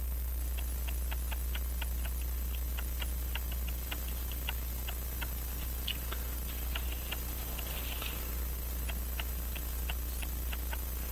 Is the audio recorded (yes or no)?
yes